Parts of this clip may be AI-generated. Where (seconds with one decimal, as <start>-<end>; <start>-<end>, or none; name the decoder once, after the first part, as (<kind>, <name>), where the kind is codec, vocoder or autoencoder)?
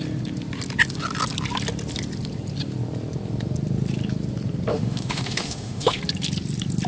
4.7-6.0 (autoencoder, DAC-VAE)